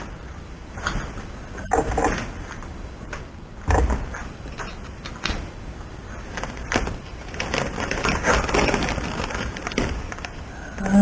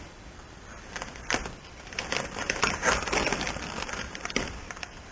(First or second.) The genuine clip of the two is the first